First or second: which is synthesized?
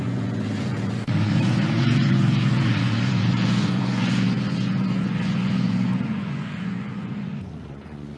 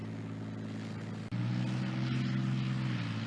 first